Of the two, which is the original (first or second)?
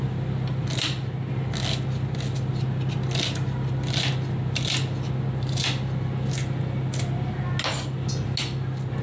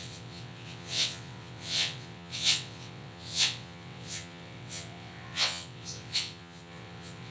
first